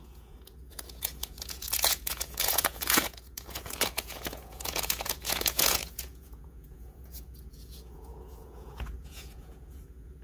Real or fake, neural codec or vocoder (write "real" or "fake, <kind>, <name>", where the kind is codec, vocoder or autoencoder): fake, vocoder, Vocos